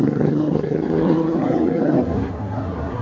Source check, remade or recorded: remade